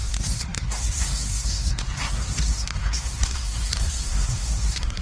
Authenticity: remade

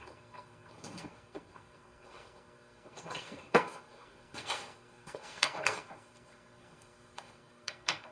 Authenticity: remade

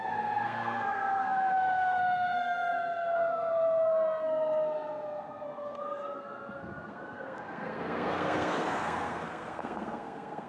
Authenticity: remade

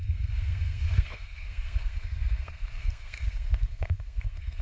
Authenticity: remade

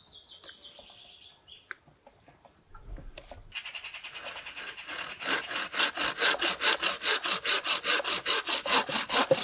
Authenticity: recorded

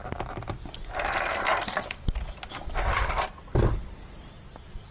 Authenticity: recorded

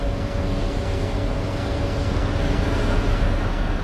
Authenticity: remade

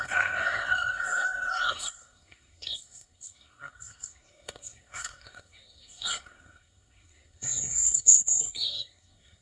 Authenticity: remade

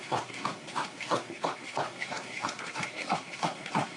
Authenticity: remade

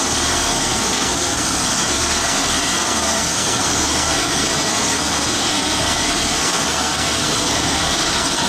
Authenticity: remade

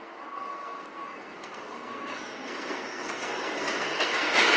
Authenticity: remade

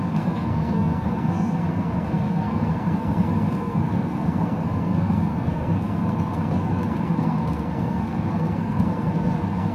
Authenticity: remade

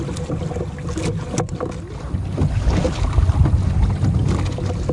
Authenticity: recorded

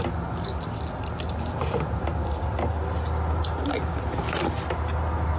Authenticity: recorded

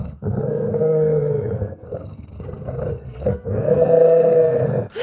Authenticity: remade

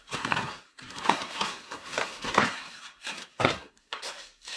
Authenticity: remade